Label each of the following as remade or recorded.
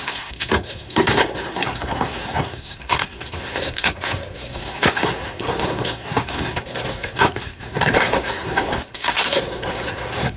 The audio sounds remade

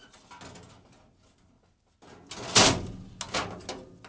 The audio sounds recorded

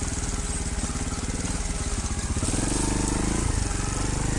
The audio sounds recorded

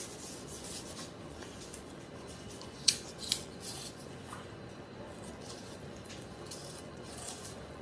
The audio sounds remade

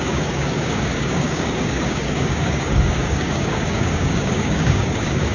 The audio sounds remade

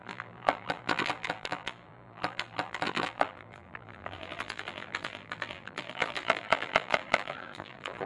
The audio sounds remade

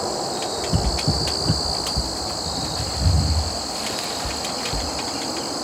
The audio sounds recorded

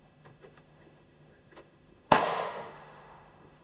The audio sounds remade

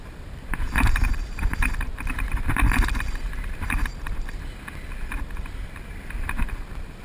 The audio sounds remade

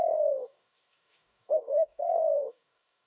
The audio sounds remade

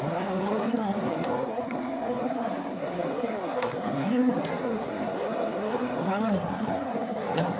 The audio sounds remade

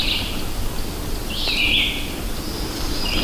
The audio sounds recorded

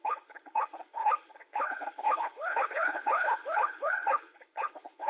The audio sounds remade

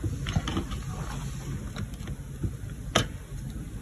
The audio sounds recorded